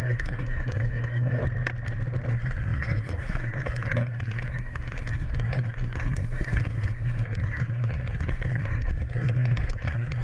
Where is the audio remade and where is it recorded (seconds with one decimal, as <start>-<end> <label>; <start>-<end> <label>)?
0.0-1.4 remade; 1.4-2.3 recorded; 2.3-10.2 remade